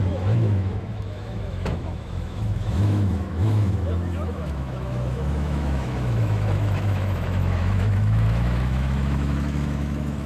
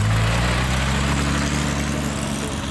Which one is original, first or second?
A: second